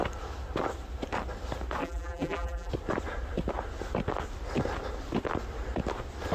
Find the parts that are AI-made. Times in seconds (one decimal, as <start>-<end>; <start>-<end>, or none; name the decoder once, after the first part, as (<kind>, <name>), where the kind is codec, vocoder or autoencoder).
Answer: 1.8-2.7 (vocoder, BigVGAN v2)